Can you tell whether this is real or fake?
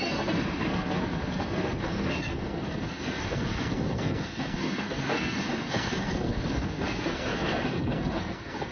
fake